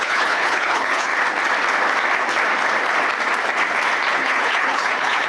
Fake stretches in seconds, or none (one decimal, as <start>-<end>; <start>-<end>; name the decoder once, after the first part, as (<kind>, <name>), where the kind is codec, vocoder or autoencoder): 0.0-1.1 (codec, HILCodec); 4.1-5.3